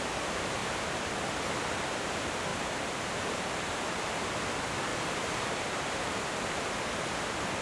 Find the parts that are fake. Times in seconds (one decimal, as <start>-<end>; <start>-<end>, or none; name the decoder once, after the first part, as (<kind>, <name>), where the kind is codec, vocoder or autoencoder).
2.5-3.8 (vocoder, BigVGAN v2); 4.9-6.9